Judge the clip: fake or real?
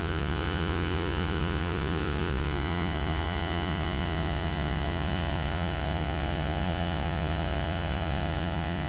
fake